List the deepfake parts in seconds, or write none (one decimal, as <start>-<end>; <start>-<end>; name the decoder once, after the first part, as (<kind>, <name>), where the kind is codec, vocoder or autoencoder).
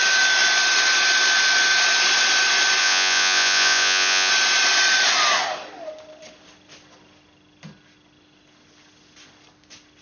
2.8-4.3 (vocoder, Vocos)